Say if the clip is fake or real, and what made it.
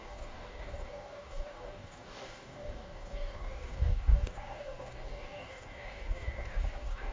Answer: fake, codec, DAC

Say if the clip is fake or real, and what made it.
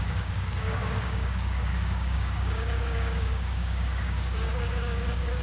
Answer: fake, codec, DAC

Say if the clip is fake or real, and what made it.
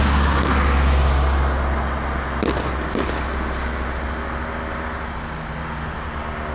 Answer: real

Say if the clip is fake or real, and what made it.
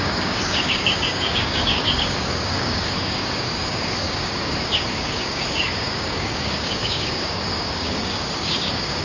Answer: fake, codec, DAC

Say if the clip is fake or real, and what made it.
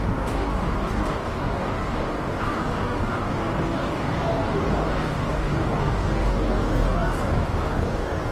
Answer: fake, codec, DAC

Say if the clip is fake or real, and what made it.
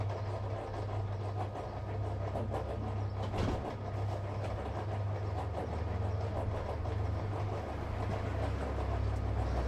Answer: real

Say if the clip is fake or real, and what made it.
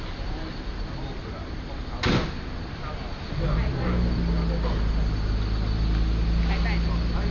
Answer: real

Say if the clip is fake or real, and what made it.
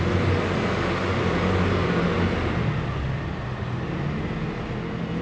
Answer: real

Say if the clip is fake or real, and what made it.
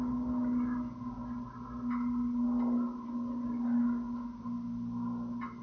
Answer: real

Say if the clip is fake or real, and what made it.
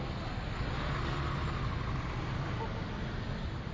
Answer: real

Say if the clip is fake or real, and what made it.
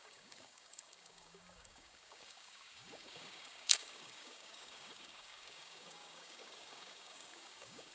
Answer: fake, codec, DAC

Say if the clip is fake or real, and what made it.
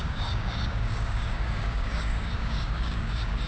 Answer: fake, codec, DAC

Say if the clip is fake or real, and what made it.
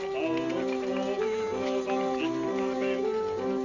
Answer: real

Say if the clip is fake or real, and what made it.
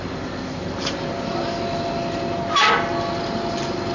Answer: real